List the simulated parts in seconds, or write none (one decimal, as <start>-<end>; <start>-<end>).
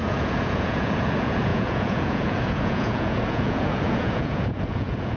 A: 0.0-5.2